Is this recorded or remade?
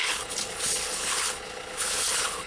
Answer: remade